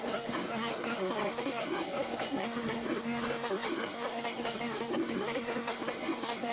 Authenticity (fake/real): fake